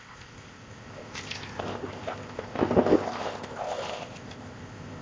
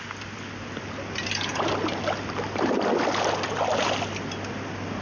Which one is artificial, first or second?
first